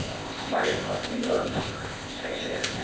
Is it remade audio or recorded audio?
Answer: remade